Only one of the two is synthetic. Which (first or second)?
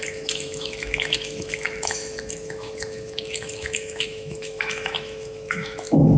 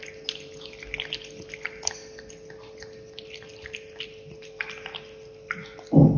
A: first